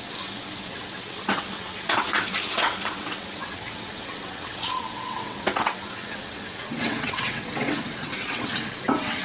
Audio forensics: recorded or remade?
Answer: remade